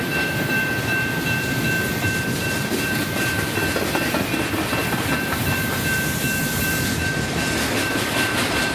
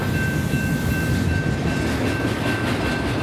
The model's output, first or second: first